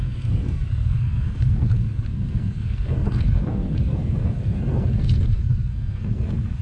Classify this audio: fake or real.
fake